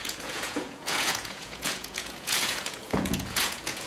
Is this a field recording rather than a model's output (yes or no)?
no